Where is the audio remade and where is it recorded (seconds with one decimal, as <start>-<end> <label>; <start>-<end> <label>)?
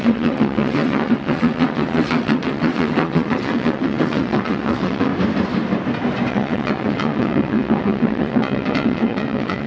0.0-5.1 remade; 5.1-6.3 recorded; 6.3-9.7 remade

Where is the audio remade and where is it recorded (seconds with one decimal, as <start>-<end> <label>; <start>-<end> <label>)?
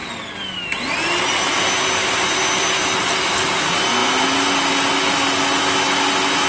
0.0-6.5 recorded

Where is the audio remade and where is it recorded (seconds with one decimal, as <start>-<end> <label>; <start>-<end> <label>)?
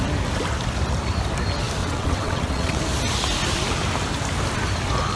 0.0-1.8 recorded; 1.8-2.8 remade; 2.8-5.2 recorded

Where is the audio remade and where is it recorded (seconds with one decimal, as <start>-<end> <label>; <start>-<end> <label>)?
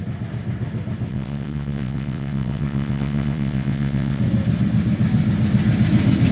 0.0-1.1 recorded; 1.1-4.2 remade; 4.2-6.3 recorded